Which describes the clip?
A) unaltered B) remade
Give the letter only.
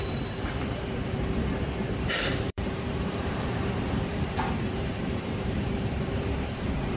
B